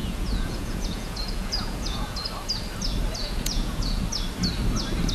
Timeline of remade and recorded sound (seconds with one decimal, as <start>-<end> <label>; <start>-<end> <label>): 0.0-2.2 remade; 2.2-3.2 recorded; 3.2-4.0 remade; 4.0-5.1 recorded